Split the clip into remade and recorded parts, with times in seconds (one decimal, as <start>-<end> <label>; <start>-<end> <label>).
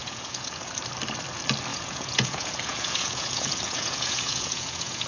0.0-0.7 remade; 0.7-1.7 recorded; 1.7-5.1 remade